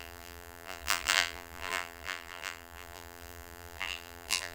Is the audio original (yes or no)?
no